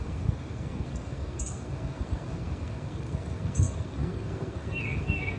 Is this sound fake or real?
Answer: fake